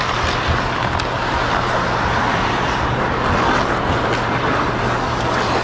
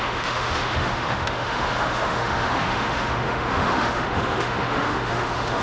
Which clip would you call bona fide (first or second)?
first